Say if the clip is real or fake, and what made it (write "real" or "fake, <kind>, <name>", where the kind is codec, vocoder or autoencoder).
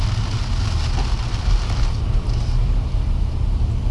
real